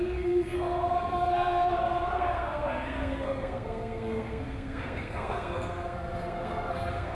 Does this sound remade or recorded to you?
remade